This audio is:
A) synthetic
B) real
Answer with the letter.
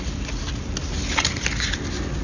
B